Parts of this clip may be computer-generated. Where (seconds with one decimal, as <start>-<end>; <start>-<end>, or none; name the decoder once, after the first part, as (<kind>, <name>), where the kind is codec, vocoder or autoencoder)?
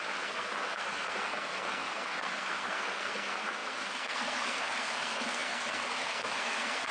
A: 0.0-6.9 (codec, SNAC)